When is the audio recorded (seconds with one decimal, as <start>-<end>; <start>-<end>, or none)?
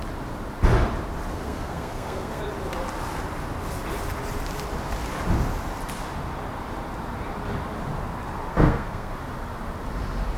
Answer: 0.0-1.3; 2.4-8.5; 9.1-10.4